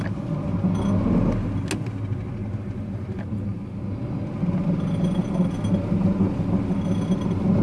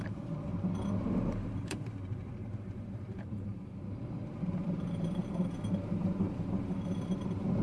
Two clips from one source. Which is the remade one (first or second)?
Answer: second